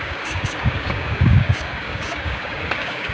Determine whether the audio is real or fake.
fake